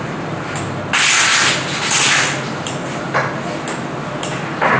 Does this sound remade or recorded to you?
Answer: recorded